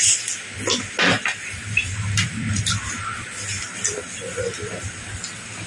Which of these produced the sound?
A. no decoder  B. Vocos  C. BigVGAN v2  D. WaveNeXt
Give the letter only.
A